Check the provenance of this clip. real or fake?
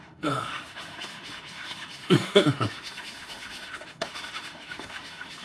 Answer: fake